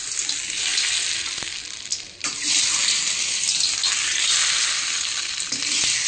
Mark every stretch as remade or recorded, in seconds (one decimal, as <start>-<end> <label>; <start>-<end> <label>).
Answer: 0.0-6.1 recorded